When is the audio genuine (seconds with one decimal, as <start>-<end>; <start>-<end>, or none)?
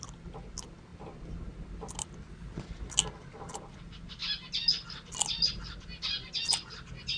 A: 0.0-7.2